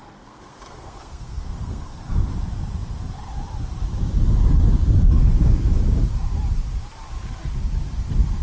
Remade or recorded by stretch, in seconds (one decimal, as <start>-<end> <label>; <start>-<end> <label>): 0.0-2.3 remade; 2.3-8.4 recorded